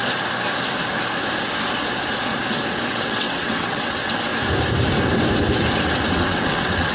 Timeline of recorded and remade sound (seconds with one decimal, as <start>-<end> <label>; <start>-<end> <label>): 0.0-2.9 recorded; 2.9-4.3 remade; 4.3-6.1 recorded; 6.1-6.9 remade